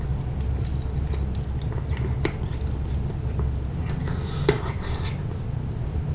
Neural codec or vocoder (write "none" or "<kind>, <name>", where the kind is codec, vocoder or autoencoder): none